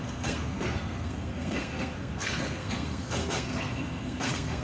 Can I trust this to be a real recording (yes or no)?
no